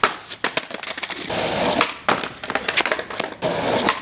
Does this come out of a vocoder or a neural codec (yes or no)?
no